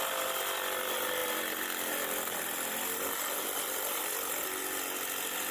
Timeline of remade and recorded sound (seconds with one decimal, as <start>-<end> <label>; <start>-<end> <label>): 0.0-5.5 recorded